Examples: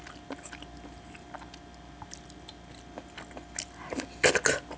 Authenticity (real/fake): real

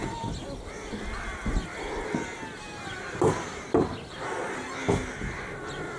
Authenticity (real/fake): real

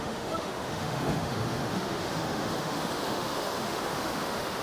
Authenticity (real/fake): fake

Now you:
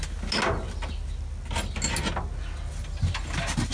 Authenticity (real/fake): real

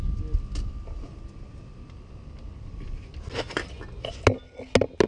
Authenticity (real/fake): real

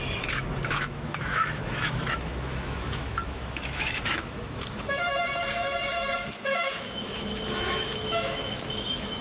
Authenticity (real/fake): fake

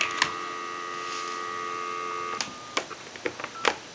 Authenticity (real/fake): real